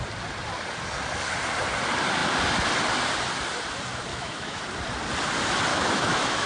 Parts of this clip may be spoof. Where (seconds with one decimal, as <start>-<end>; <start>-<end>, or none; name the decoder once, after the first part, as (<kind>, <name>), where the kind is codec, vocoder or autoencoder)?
4.1-4.6 (autoencoder, DAC-VAE); 5.7-6.5